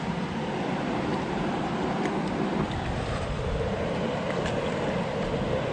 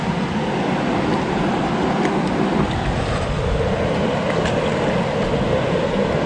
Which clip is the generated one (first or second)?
first